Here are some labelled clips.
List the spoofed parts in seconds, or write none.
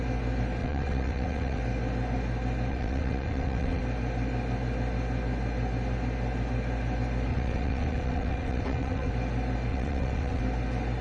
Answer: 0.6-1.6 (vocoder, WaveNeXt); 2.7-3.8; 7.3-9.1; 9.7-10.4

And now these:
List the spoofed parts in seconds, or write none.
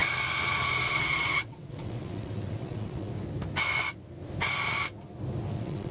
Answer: 0.9-3.1 (vocoder, WaveNeXt); 5.5-5.9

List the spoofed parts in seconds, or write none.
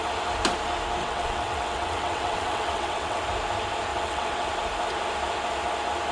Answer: 1.0-3.2 (vocoder, WaveNeXt); 3.9-4.5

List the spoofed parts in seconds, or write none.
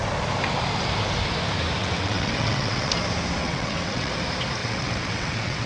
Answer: 1.8-2.9 (vocoder, WaveNeXt); 3.4-4.1; 4.6-5.7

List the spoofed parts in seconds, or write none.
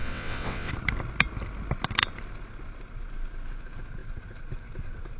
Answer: 0.0-0.7 (vocoder, WaveNeXt)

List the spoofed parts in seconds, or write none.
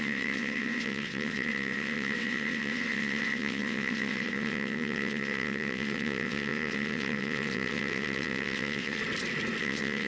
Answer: 0.0-9.0 (vocoder, WaveNeXt); 9.6-10.1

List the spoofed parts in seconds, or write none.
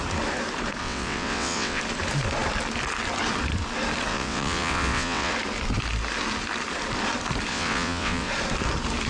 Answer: 0.8-1.8 (vocoder, WaveNeXt); 4.1-5.3; 7.5-8.3